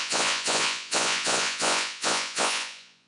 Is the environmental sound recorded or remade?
remade